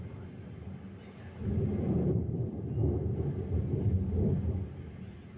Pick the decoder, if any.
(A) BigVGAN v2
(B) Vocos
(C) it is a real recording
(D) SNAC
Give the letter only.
C